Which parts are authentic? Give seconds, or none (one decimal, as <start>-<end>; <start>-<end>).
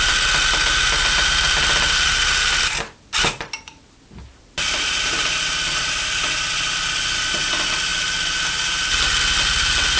0.0-10.0